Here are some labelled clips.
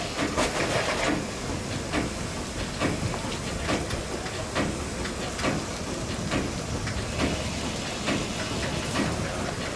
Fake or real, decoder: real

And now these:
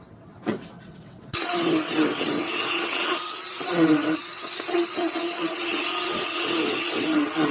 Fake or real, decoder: fake, vocoder, WaveNeXt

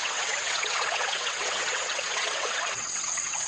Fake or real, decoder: fake, vocoder, WaveNeXt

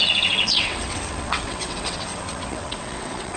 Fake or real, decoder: fake, vocoder, WaveNeXt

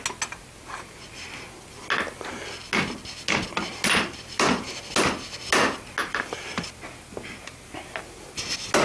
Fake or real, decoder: real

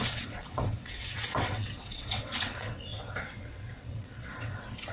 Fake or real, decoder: fake, vocoder, WaveNeXt